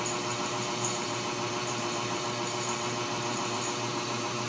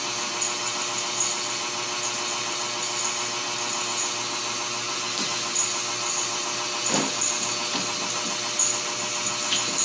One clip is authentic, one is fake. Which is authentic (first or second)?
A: second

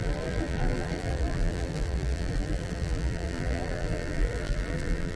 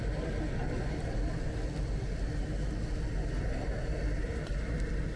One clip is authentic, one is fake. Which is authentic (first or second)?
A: second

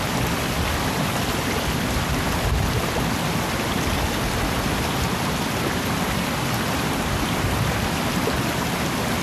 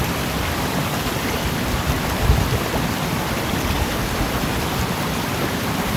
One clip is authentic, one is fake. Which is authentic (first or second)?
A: first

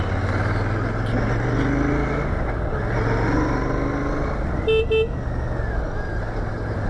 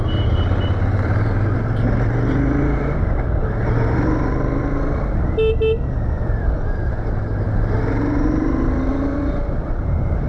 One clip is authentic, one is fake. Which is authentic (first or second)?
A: first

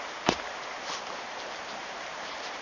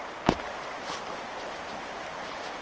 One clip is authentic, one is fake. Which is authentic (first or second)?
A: second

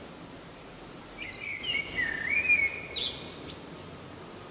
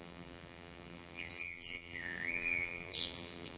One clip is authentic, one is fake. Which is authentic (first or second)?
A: first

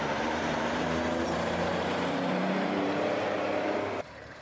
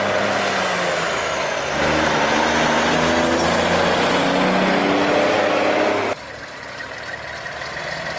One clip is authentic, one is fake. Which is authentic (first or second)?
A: second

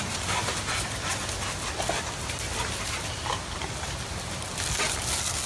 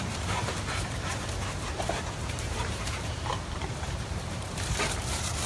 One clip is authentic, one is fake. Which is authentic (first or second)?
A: first